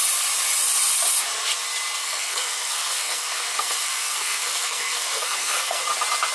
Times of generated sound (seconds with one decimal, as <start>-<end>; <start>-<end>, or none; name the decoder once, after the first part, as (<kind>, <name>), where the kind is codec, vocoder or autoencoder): 2.0-5.8 (codec, SNAC)